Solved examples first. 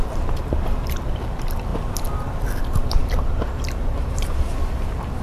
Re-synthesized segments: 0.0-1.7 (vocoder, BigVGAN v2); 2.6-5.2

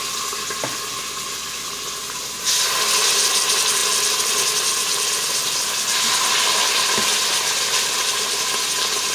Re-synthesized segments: none